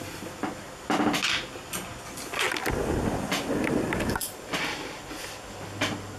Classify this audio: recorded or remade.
recorded